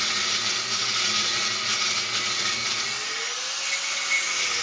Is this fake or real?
real